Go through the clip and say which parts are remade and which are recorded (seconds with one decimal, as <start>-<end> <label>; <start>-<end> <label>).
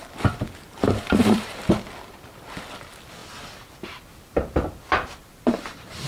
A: 0.0-1.6 remade; 1.6-5.2 recorded; 5.2-6.1 remade